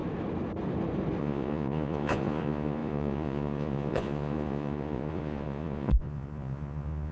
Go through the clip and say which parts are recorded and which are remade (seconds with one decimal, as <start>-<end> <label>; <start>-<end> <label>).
0.0-1.2 recorded; 1.2-7.1 remade